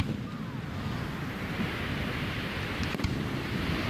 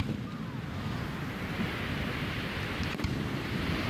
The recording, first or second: first